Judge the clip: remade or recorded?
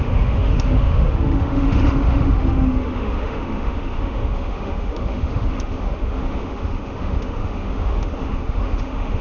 remade